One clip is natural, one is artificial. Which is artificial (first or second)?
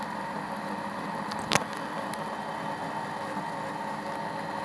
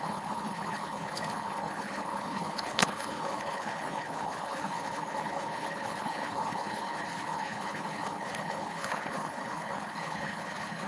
second